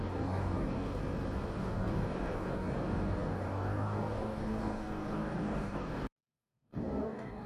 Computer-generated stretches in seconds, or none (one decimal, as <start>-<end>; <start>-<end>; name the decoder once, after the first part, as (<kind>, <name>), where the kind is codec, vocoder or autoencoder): 0.0-1.0 (codec, DAC); 1.6-7.5